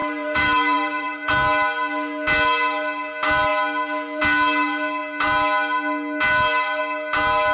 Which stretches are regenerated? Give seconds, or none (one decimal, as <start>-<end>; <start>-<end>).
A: 0.0-1.3